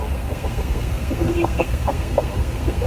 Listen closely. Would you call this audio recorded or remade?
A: remade